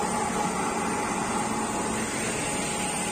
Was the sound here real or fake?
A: real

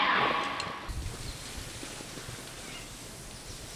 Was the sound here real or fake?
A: real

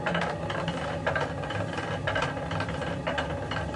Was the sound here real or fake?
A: real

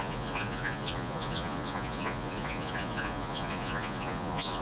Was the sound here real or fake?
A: fake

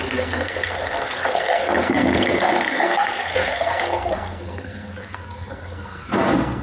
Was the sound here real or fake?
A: fake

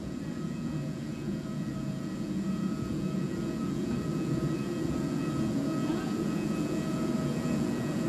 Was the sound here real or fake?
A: fake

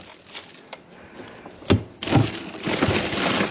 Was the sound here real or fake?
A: real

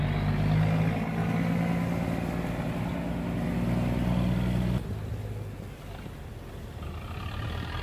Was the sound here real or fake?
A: real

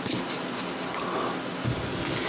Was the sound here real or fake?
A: real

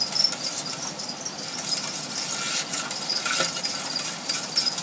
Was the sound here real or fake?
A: real